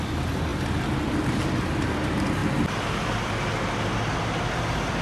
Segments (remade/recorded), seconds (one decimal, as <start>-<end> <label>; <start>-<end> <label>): 0.0-5.0 recorded